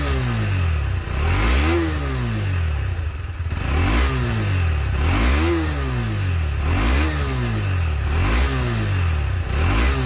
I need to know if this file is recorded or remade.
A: recorded